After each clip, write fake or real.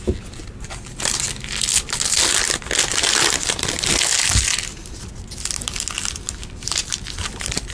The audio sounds real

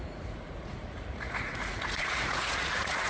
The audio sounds fake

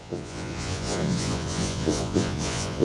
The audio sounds fake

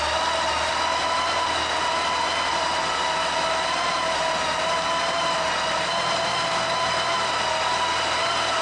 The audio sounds real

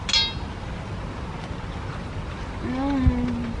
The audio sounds real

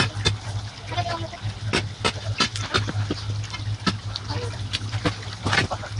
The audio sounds real